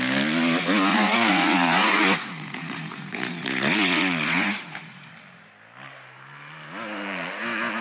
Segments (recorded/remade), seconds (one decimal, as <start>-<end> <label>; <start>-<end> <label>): 0.0-0.9 recorded; 0.9-5.1 remade; 5.1-7.8 recorded